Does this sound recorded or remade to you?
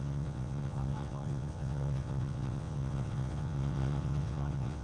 remade